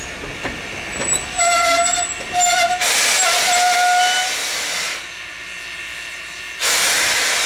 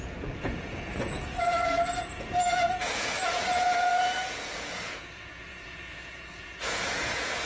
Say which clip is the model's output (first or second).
second